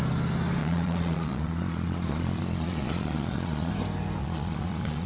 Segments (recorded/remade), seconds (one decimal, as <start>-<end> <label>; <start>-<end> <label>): 0.0-0.6 recorded; 0.6-3.7 remade; 3.7-4.2 recorded; 4.2-5.1 remade